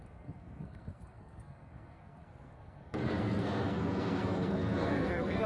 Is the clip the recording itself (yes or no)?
no